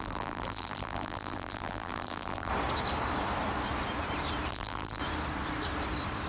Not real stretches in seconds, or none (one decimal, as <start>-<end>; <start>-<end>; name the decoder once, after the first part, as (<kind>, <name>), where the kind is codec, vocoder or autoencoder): 0.0-2.5 (vocoder, BigVGAN v2); 4.5-5.0